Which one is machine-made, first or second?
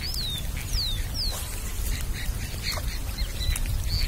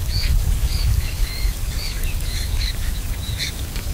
second